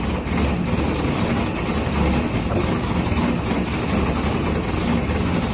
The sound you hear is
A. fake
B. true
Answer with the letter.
B